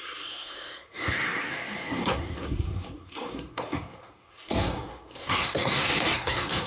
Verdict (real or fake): fake